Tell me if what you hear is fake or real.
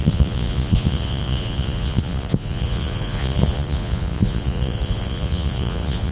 fake